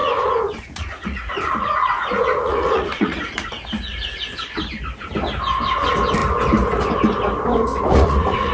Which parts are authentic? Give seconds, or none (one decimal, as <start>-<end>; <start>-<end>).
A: 3.5-7.7